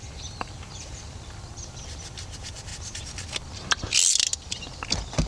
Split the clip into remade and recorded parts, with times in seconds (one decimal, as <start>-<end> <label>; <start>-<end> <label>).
0.0-5.3 recorded